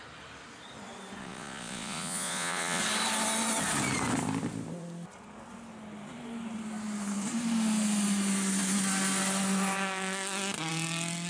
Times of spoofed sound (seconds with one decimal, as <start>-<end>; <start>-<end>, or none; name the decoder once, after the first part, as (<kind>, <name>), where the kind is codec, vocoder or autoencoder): 1.2-2.8 (vocoder, Vocos)